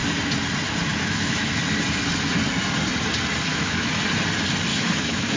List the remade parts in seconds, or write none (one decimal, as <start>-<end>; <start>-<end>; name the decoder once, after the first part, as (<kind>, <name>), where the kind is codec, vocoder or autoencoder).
0.9-1.6 (autoencoder, DAC-VAE); 3.5-4.0; 4.7-5.4